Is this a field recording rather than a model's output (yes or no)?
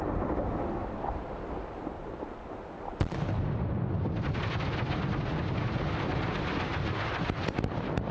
yes